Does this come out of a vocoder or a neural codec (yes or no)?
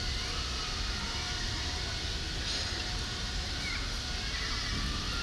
no